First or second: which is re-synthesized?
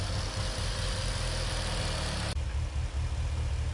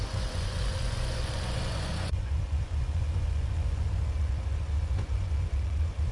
second